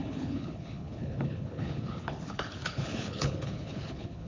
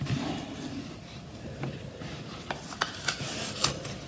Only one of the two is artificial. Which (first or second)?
first